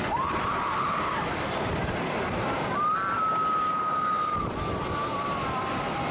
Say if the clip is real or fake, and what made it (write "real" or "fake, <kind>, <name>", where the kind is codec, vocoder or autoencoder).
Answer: real